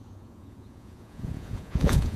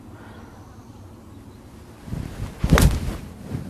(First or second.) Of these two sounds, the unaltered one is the second